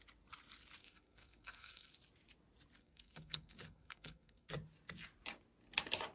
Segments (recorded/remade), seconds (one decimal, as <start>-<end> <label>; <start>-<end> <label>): 0.0-0.8 recorded; 0.8-1.9 remade; 1.9-2.8 recorded; 2.8-4.5 remade; 4.5-6.1 recorded